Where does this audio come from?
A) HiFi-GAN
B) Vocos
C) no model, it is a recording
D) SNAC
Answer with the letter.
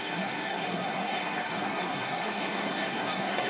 D